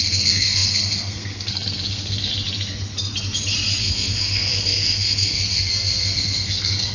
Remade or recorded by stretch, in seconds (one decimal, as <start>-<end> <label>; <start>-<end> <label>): 0.0-2.3 remade; 2.3-3.8 recorded; 3.8-6.9 remade